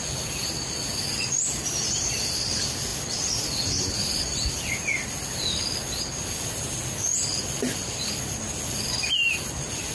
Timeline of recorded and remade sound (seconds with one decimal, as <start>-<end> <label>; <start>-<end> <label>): 0.0-7.1 recorded; 7.1-8.2 remade; 8.2-9.9 recorded